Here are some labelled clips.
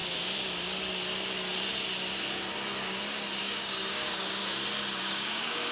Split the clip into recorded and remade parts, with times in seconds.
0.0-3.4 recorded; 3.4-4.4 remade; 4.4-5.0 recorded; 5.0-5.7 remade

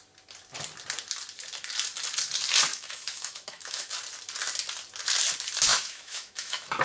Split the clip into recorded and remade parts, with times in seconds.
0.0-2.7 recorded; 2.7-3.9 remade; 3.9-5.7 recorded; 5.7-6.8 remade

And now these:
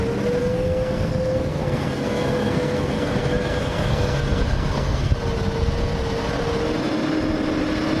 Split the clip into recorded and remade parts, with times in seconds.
0.0-0.4 recorded; 0.4-5.1 remade; 5.1-8.0 recorded